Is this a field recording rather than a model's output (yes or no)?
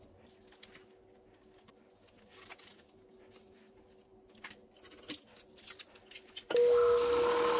yes